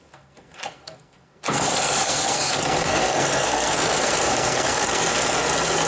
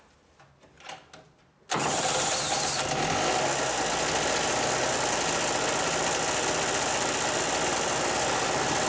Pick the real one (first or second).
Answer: second